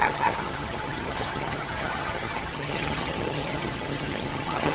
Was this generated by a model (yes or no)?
yes